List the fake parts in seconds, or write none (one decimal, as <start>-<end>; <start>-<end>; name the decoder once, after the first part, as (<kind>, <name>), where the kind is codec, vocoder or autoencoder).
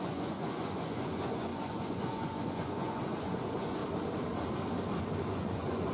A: 0.0-3.8 (vocoder, Vocos); 5.3-5.9